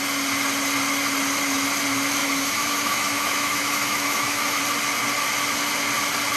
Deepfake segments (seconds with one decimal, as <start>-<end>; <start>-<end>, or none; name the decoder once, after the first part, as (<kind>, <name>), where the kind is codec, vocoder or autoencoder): 2.2-4.6 (autoencoder, DAC-VAE)